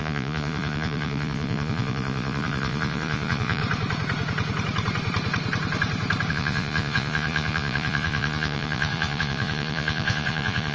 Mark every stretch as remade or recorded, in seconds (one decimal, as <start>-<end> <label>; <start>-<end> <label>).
0.0-3.6 remade; 3.6-6.3 recorded; 6.3-10.7 remade